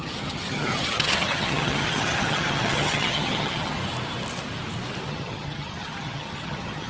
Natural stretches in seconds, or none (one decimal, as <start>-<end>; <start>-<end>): 3.8-5.1